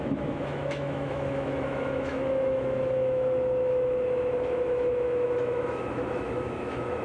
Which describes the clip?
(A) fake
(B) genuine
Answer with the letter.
A